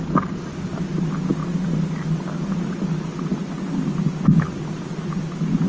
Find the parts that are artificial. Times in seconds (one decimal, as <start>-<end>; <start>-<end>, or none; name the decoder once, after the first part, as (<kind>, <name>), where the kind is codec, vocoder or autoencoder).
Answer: none